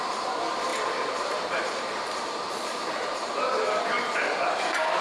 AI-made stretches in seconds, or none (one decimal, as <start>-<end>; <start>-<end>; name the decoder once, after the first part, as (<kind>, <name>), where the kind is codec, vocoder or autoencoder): 0.7-3.7 (vocoder, BigVGAN v2)